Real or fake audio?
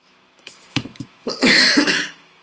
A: fake